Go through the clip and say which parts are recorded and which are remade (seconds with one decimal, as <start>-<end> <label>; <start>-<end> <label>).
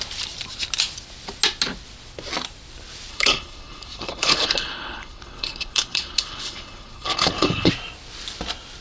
0.0-3.1 recorded; 3.1-7.7 remade; 7.7-8.8 recorded